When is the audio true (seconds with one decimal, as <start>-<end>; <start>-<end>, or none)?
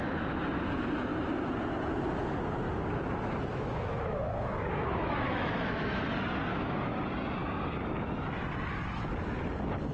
0.0-3.5; 6.0-6.5; 7.0-9.9